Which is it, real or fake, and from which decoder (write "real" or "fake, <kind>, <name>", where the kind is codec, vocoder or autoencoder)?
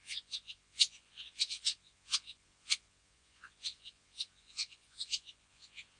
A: fake, vocoder, Vocos